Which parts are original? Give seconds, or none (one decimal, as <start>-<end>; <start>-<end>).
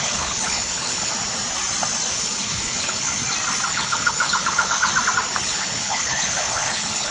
1.1-2.1; 3.2-3.7; 4.9-5.4